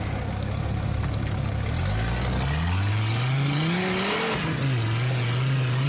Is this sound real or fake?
real